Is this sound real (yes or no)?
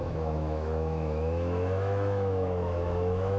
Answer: no